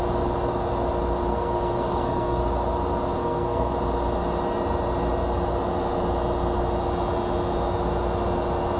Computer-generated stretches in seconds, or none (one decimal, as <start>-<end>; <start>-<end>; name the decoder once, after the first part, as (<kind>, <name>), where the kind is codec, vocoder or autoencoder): 1.3-2.4 (codec, SNAC); 3.2-3.7